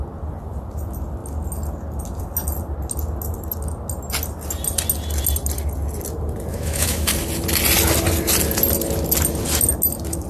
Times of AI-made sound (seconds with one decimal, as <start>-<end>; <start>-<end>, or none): 6.5-7.1